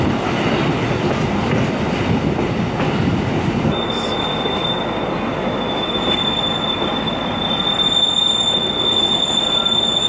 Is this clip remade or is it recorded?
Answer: recorded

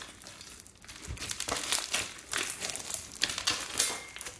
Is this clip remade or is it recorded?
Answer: recorded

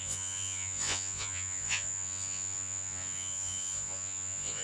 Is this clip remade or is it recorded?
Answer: remade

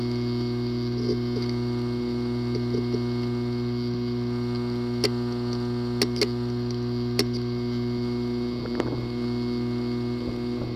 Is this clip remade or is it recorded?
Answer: recorded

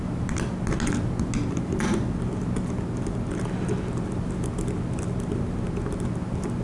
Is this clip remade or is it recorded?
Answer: recorded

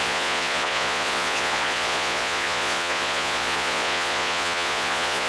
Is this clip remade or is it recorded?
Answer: remade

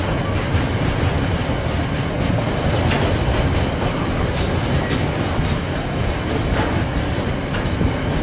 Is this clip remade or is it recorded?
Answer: recorded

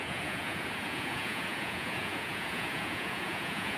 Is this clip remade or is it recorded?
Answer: remade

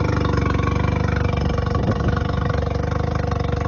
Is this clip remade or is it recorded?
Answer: recorded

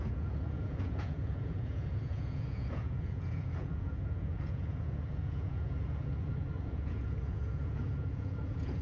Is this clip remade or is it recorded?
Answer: remade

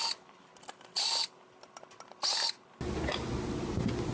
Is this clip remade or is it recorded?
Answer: recorded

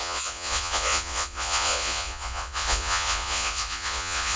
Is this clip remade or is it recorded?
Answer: remade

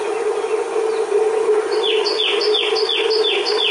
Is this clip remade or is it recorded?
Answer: remade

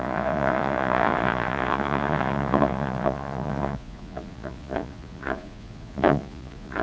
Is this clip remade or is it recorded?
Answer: remade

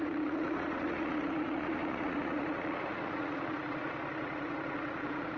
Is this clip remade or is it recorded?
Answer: remade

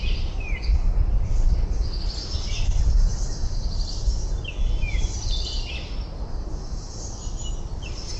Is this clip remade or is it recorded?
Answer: recorded